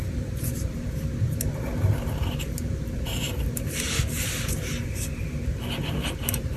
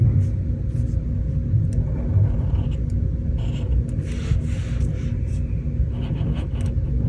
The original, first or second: second